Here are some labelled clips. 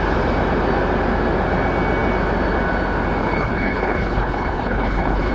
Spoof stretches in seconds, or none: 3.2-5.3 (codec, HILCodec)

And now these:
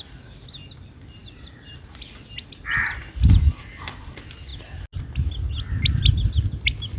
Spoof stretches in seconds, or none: none

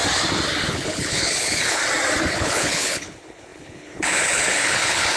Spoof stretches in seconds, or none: 0.7-1.8 (codec, HILCodec); 2.3-5.2

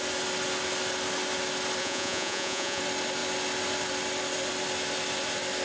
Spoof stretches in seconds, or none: 1.8-2.8 (vocoder, Vocos)

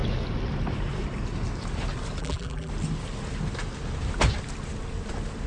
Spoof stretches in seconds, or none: 2.2-2.7 (vocoder, BigVGAN v2)

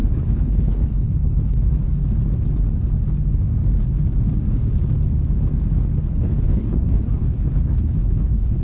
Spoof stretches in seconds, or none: 0.0-2.0 (codec, HILCodec); 6.1-8.6

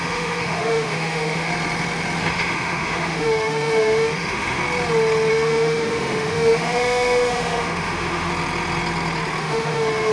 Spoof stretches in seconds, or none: 0.0-1.5 (autoencoder, DAC-VAE); 2.2-4.6; 5.3-8.3; 9.4-10.1